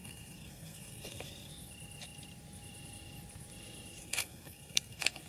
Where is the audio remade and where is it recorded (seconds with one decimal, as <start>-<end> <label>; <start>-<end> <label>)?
0.0-1.5 remade; 1.5-4.0 recorded; 4.0-5.3 remade